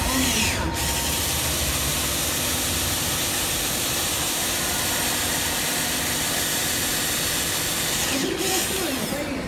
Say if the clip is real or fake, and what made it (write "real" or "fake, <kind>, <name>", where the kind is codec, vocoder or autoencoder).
real